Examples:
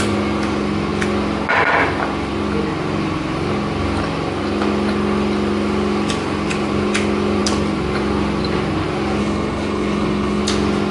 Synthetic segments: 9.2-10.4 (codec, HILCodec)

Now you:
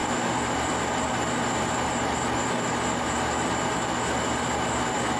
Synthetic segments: none

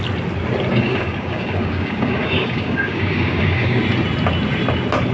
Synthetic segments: 0.7-3.8 (codec, DAC)

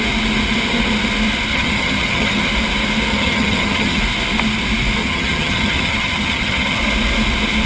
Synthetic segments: 1.5-2.5 (vocoder, HiFi-GAN); 3.1-4.0; 5.0-6.8

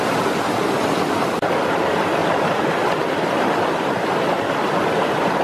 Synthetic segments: none

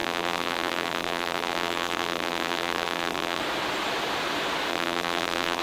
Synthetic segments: 0.0-3.4 (vocoder, BigVGAN v2); 4.7-5.6

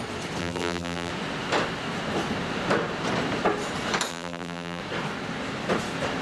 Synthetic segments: 0.4-1.1 (vocoder, BigVGAN v2); 4.1-4.8

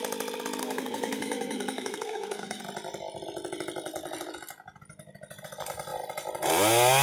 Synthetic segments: 0.6-2.6 (codec, SNAC)